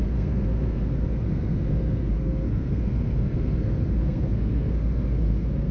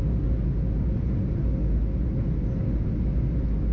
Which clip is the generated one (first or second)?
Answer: first